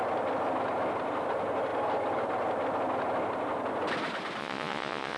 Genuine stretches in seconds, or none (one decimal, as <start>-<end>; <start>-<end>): 0.0-4.4